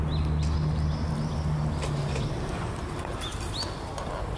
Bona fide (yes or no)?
yes